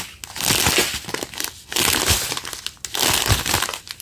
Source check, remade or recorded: recorded